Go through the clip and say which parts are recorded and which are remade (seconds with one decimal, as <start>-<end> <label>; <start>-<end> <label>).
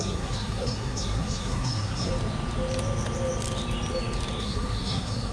0.0-2.1 remade; 2.1-4.4 recorded; 4.4-5.3 remade